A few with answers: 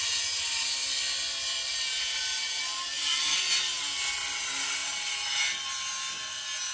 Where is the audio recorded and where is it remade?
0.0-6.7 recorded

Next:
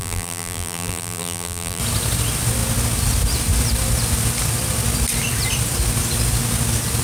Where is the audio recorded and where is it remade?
0.0-1.8 remade; 1.8-7.0 recorded

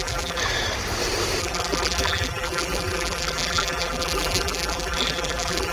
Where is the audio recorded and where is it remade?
0.0-0.4 remade; 0.4-1.4 recorded; 1.4-5.7 remade

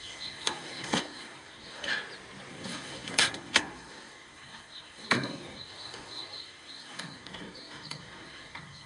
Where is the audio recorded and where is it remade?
0.0-1.9 remade; 1.9-2.5 recorded; 2.5-8.9 remade

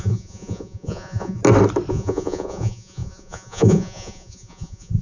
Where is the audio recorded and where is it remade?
0.0-1.4 remade; 1.4-1.9 recorded; 1.9-5.0 remade

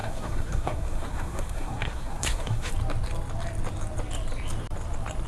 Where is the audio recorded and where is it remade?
0.0-2.7 remade; 2.7-5.3 recorded

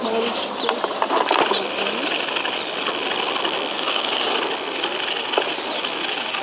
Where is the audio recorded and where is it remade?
0.0-3.7 recorded; 3.7-4.4 remade; 4.4-6.4 recorded

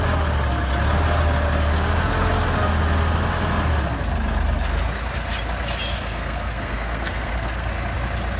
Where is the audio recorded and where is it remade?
0.0-5.9 recorded; 5.9-7.7 remade; 7.7-8.4 recorded